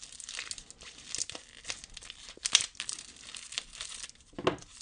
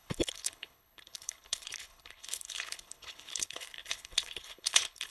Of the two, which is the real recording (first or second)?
first